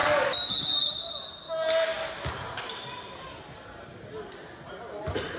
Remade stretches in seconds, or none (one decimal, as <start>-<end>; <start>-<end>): none